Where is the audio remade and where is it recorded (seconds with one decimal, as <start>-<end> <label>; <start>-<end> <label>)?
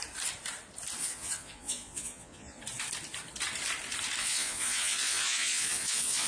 0.0-1.0 recorded; 1.0-2.6 remade; 2.6-4.2 recorded; 4.2-6.3 remade